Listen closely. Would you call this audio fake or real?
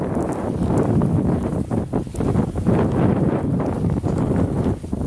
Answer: real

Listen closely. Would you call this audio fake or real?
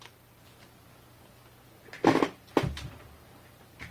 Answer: real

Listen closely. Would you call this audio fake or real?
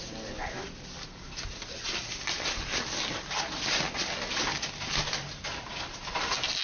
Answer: fake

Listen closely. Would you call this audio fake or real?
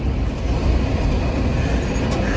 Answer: real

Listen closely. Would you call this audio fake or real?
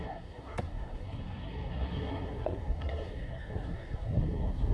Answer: fake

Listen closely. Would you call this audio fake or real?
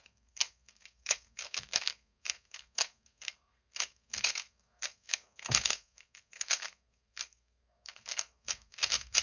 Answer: fake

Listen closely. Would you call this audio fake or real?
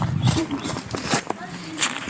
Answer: fake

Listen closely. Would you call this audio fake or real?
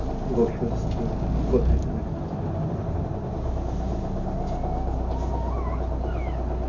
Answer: real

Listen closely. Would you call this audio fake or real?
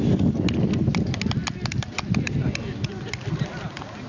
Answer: real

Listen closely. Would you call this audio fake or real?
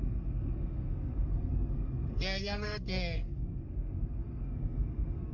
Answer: fake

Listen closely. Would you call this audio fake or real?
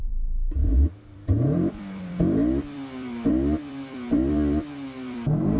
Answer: fake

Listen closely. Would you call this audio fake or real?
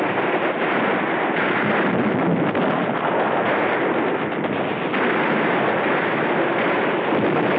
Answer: real